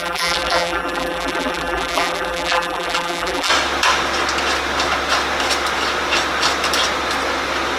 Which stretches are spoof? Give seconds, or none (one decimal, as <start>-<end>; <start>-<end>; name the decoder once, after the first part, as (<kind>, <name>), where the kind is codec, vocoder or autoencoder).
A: 0.0-3.5 (vocoder, BigVGAN v2)